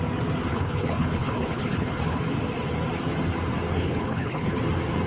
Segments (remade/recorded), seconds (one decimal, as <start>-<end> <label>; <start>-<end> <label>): 0.0-0.5 recorded; 0.5-2.2 remade; 2.2-3.7 recorded; 3.7-4.6 remade; 4.6-5.1 recorded